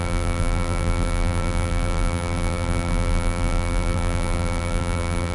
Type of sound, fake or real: fake